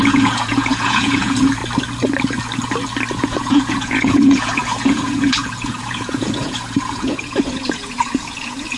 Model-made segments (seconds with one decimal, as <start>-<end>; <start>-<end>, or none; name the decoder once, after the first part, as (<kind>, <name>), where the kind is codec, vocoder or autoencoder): 0.0-1.6 (vocoder, Vocos); 3.2-8.8